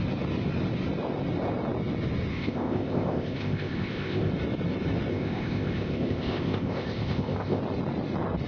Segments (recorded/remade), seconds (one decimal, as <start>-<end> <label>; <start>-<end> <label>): 0.0-2.3 recorded; 2.3-4.3 remade; 4.3-5.1 recorded; 5.1-7.6 remade; 7.6-8.5 recorded